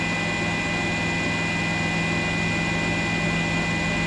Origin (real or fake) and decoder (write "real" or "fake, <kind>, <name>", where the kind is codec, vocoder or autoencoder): real